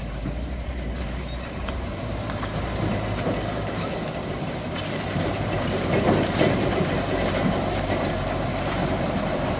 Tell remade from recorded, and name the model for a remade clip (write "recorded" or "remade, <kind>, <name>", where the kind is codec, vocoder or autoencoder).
remade, vocoder, BigVGAN v2